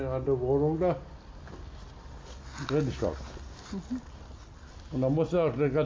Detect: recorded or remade recorded